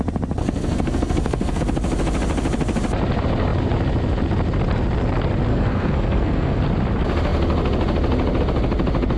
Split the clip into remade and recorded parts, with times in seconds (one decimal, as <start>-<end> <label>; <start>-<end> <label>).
0.0-0.4 recorded; 0.4-1.6 remade; 1.6-5.5 recorded; 5.5-6.6 remade; 6.6-9.2 recorded